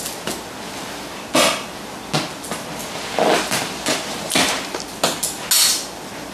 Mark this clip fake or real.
real